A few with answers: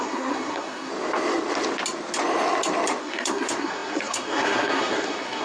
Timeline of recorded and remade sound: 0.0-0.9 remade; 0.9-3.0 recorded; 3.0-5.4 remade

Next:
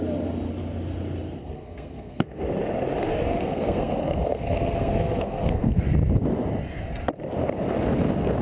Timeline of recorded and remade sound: 0.0-1.4 recorded; 1.4-2.4 remade; 2.4-3.3 recorded; 3.3-5.8 remade; 5.8-8.4 recorded

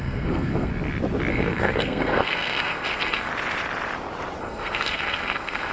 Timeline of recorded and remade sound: 0.0-0.7 remade; 0.7-1.3 recorded; 1.3-3.3 remade; 3.3-4.4 recorded; 4.4-5.7 remade